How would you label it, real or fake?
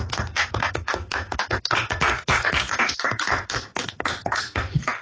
fake